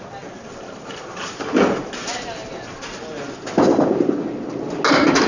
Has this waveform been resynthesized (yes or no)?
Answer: no